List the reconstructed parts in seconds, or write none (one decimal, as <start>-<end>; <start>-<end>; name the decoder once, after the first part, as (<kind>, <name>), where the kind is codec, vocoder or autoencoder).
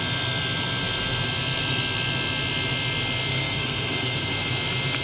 3.3-4.3 (codec, SNAC)